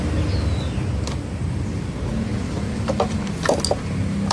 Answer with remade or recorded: recorded